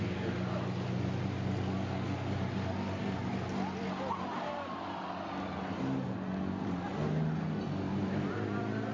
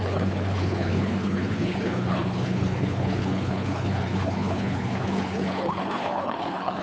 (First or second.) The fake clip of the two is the second